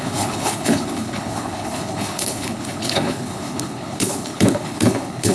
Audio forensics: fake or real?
fake